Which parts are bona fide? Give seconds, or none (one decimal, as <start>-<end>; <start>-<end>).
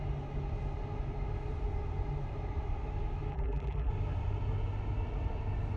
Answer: 0.0-3.3; 3.9-5.8